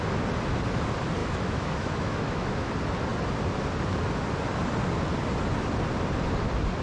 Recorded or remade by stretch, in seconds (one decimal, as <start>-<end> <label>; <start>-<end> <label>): 0.0-1.2 recorded; 1.2-2.7 remade; 2.7-6.8 recorded